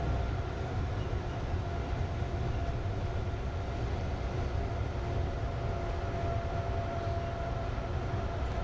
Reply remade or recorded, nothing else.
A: recorded